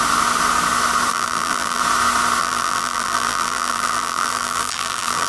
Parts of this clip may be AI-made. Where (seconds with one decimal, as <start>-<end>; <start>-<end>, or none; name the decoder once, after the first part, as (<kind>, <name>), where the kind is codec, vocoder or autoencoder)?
1.1-1.8 (vocoder, BigVGAN v2); 2.4-5.3